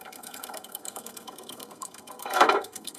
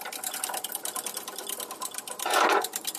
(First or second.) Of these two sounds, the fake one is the first